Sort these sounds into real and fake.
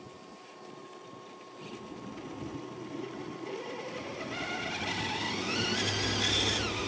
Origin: real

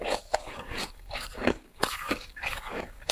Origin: fake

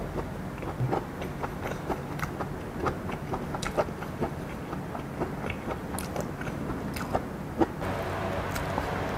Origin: real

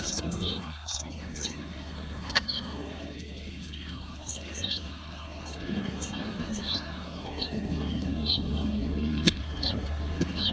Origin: fake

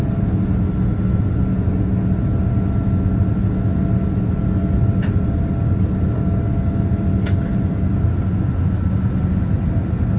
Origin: real